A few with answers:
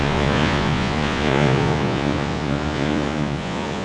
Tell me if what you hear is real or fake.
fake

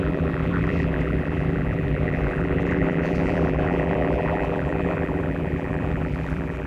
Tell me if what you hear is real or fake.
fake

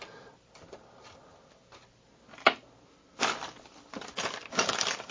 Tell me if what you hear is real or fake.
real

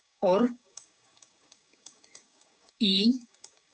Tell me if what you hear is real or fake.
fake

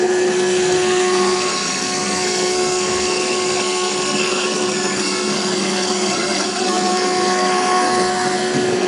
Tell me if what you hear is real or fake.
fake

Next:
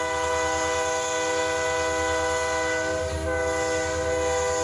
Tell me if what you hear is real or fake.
real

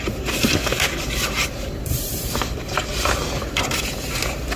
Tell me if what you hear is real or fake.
fake